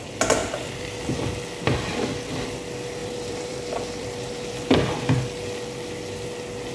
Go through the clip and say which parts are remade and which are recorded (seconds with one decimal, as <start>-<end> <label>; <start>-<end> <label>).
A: 0.0-0.4 recorded; 0.4-1.0 remade; 1.0-3.0 recorded; 3.0-4.5 remade; 4.5-6.7 recorded